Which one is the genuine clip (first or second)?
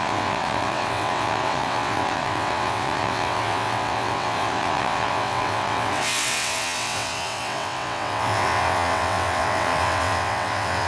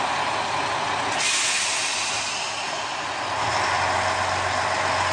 second